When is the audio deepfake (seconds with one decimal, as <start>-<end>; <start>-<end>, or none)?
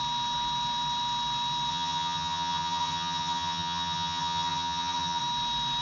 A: 1.7-5.2